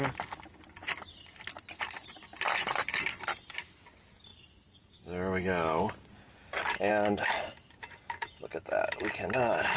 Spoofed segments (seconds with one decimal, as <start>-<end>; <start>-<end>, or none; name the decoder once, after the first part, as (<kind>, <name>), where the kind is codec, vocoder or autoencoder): none